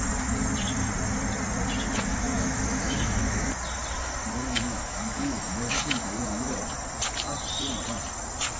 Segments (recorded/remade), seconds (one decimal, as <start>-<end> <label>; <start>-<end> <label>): 0.0-2.1 recorded; 2.1-3.5 remade; 3.5-4.4 recorded; 4.4-6.5 remade; 6.5-8.6 recorded